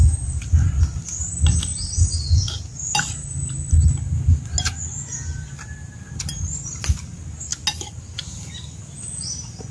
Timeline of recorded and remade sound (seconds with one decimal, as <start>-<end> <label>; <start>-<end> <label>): 0.0-9.7 recorded